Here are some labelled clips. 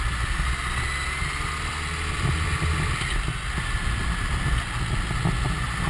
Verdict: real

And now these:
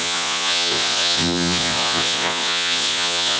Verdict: fake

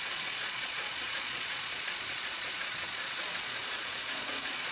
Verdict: fake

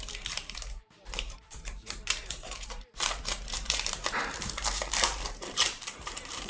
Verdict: fake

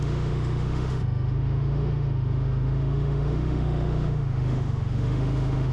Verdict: fake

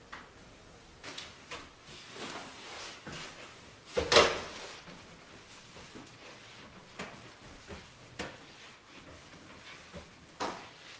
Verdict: real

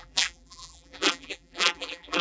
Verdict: fake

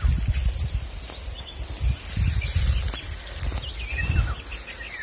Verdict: real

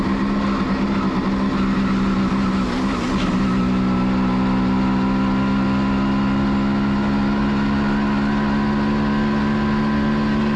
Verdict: real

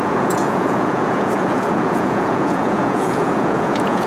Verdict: fake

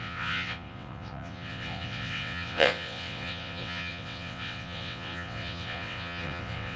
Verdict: fake